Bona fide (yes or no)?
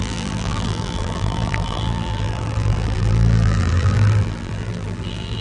no